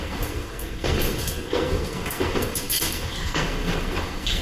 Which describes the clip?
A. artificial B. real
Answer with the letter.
A